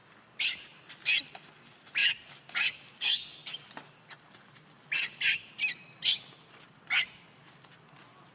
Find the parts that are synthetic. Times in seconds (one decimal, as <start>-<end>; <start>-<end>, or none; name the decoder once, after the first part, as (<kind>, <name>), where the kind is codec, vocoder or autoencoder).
none